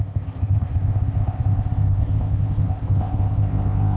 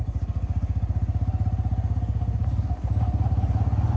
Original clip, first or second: second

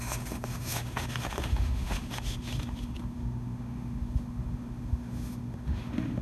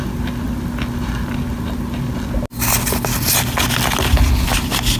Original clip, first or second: second